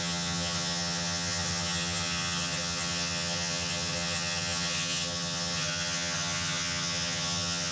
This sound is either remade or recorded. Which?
remade